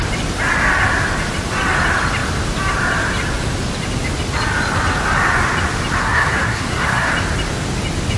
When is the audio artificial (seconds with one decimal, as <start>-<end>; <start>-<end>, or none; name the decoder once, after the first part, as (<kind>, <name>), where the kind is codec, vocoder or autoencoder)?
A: 6.0-7.1 (codec, SNAC)